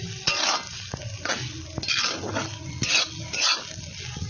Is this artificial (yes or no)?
no